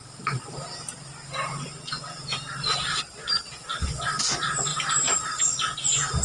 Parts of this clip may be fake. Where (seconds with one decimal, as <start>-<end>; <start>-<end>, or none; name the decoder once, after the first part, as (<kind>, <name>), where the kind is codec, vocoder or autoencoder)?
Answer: 3.3-4.2 (vocoder, BigVGAN v2); 4.7-5.4